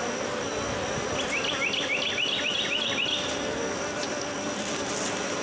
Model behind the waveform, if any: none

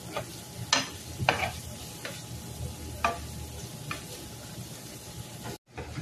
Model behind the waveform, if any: none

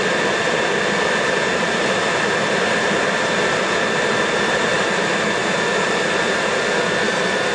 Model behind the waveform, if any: none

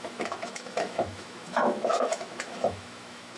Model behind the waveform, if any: autoencoder, DAC-VAE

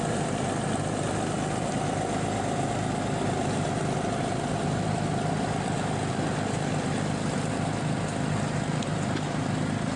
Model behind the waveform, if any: none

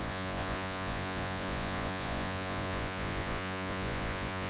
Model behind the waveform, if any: vocoder, Vocos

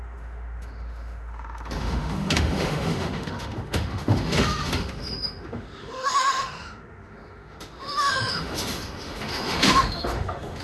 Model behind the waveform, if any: autoencoder, DAC-VAE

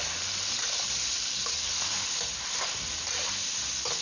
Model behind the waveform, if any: none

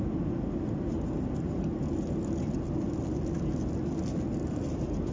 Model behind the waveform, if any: none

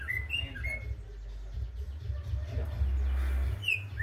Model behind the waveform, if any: none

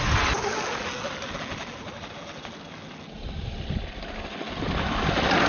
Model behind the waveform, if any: none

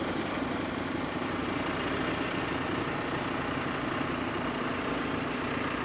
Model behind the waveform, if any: none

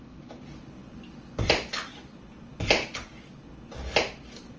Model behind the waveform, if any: none